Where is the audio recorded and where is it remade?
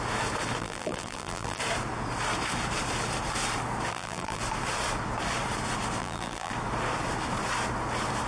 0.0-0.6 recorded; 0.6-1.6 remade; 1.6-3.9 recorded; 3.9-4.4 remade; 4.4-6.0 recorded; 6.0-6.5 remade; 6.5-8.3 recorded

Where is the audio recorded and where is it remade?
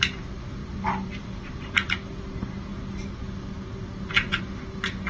0.0-0.6 recorded; 0.6-2.2 remade; 2.2-5.1 recorded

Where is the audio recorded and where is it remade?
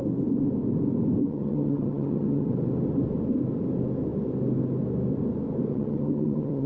0.0-1.2 recorded; 1.2-2.5 remade; 2.5-5.7 recorded; 5.7-6.7 remade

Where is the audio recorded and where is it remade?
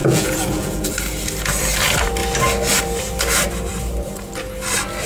0.0-0.9 remade; 0.9-5.1 recorded